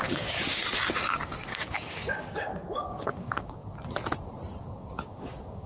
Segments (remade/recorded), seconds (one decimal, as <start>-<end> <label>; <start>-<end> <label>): 0.0-3.6 remade; 3.6-4.6 recorded; 4.6-5.7 remade

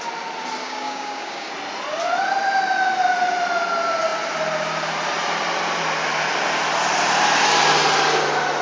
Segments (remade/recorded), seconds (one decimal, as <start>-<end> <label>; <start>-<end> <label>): 0.0-0.6 recorded; 0.6-1.5 remade; 1.5-8.6 recorded

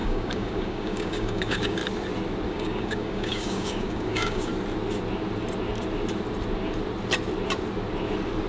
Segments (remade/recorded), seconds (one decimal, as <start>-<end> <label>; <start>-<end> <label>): 0.0-1.8 remade; 1.8-2.5 recorded; 2.5-4.5 remade; 4.5-8.5 recorded

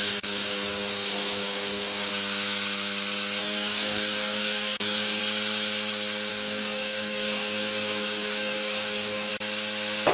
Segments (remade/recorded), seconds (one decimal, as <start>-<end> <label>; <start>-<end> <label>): 0.0-2.1 remade; 2.1-3.4 recorded; 3.4-5.2 remade; 5.2-6.3 recorded; 6.3-9.3 remade; 9.3-10.1 recorded

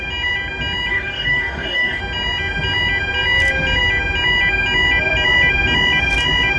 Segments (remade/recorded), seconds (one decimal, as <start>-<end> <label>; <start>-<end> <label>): 0.0-0.9 recorded; 0.9-2.0 remade; 2.0-6.6 recorded